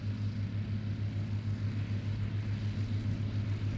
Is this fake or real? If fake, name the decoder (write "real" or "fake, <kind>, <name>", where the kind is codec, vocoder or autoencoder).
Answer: real